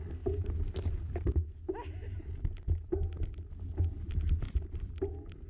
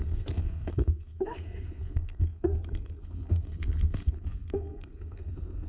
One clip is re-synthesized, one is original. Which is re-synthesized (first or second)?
second